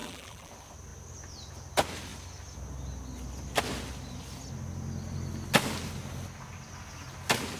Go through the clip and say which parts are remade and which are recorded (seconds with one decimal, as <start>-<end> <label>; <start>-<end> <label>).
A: 0.0-0.5 remade; 0.5-7.6 recorded